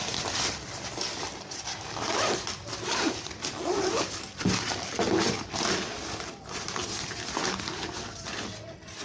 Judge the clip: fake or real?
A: real